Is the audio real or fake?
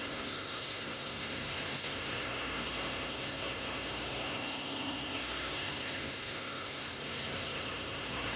fake